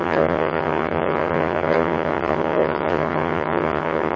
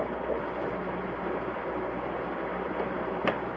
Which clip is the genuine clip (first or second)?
second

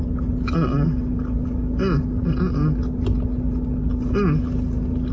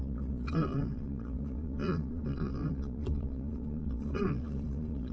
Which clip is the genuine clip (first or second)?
first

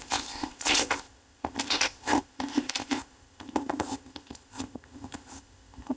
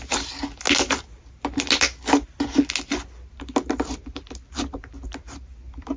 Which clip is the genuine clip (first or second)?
second